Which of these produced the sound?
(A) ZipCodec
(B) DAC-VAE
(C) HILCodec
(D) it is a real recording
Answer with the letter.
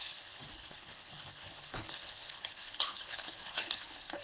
C